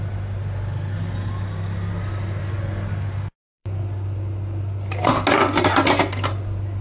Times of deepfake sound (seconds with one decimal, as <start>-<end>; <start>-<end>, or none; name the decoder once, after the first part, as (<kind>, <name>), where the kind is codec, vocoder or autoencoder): none